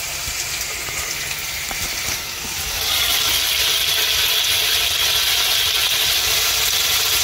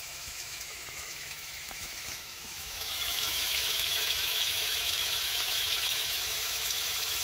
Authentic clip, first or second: first